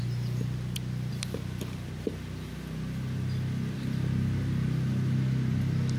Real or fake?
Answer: real